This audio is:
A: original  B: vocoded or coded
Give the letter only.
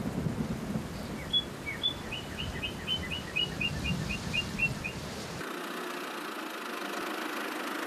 A